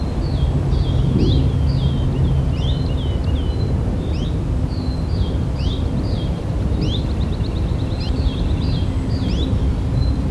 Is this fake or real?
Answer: real